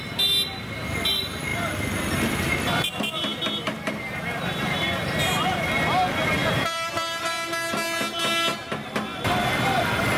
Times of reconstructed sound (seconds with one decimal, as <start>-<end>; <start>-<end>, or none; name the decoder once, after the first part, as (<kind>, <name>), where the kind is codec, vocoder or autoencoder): 1.5-5.0 (vocoder, BigVGAN v2); 6.4-7.3